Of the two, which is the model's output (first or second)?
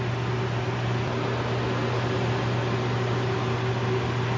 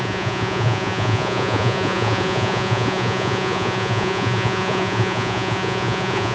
second